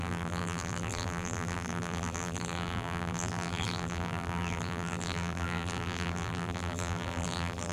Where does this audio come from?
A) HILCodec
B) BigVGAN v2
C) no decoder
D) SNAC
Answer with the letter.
B